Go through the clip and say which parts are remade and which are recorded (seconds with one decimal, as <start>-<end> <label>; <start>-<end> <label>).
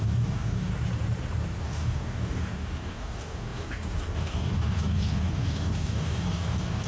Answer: 0.0-0.7 remade; 0.7-1.6 recorded; 1.6-6.9 remade